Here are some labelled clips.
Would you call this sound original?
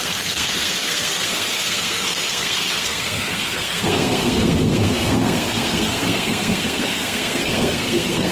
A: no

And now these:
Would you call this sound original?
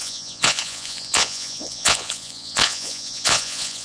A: no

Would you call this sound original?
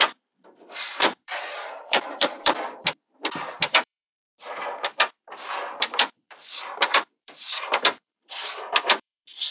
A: no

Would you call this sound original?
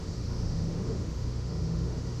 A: no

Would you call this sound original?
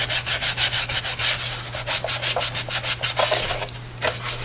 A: yes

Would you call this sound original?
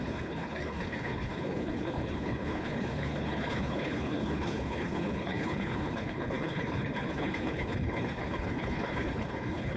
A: no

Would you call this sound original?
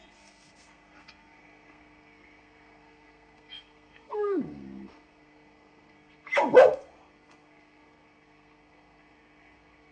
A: no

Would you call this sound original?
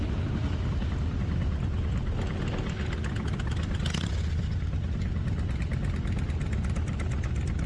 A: yes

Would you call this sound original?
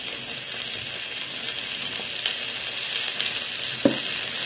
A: yes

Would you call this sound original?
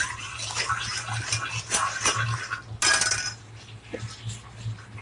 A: yes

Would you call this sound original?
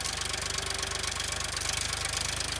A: yes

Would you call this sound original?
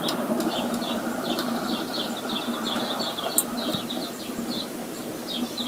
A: yes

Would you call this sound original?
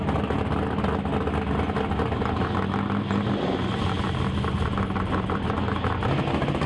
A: yes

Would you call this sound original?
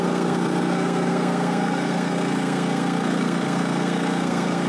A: no